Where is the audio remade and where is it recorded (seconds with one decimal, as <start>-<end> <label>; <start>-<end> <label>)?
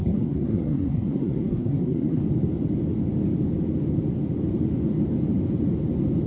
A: 0.0-2.2 remade; 2.2-6.3 recorded